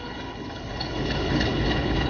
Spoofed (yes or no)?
yes